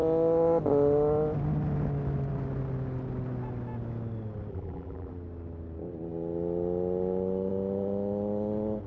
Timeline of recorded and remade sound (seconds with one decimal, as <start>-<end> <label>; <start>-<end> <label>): 0.0-4.5 recorded; 4.5-5.1 remade; 5.1-8.9 recorded